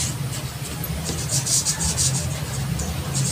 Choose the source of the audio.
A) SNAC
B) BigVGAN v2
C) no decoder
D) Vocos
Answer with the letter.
C